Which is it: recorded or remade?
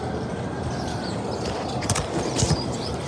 recorded